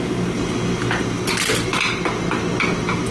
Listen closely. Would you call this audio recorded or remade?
recorded